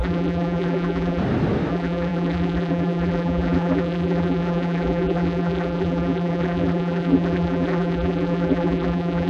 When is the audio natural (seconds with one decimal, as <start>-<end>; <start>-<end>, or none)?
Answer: 1.2-1.7